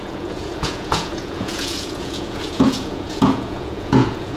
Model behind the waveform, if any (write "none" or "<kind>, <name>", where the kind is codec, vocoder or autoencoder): vocoder, Vocos